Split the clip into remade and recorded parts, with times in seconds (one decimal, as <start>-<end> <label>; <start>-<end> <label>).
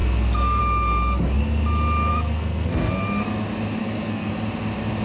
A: 0.0-0.6 remade; 0.6-2.1 recorded; 2.1-2.9 remade; 2.9-3.8 recorded; 3.8-4.3 remade; 4.3-5.0 recorded